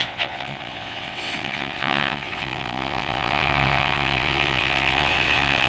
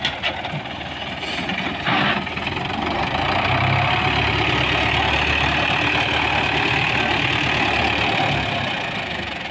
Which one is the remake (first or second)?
first